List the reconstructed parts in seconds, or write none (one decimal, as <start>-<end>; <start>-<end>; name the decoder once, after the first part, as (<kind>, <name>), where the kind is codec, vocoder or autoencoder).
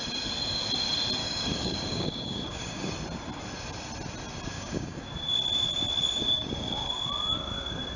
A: 1.2-2.9 (codec, DAC); 4.5-5.0; 6.2-6.9